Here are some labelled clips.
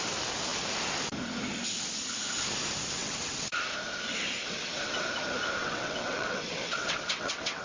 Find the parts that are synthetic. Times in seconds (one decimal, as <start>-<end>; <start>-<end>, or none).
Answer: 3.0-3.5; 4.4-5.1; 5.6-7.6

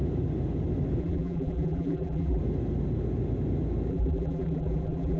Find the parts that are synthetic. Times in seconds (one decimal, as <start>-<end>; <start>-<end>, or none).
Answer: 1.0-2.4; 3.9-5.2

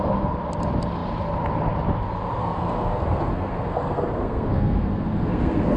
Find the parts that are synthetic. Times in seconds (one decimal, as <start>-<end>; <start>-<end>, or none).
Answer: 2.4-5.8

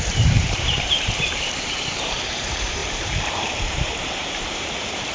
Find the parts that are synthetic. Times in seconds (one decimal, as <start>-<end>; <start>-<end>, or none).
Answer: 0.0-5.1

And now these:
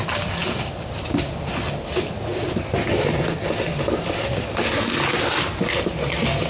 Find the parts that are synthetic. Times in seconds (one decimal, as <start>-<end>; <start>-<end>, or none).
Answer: none